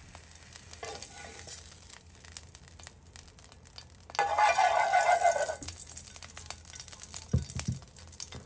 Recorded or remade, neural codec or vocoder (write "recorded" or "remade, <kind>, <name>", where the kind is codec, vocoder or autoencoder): recorded